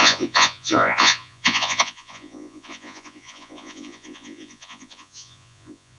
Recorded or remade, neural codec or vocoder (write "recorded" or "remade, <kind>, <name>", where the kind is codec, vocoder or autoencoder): remade, vocoder, Vocos